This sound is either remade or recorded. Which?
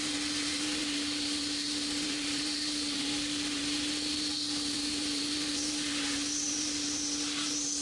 remade